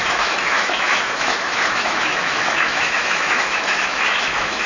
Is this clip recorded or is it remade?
remade